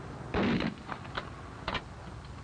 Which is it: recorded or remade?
recorded